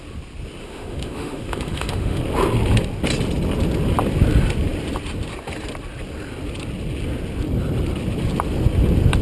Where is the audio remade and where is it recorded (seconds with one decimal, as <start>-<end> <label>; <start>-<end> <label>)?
0.0-0.6 recorded; 0.6-2.2 remade; 2.2-9.2 recorded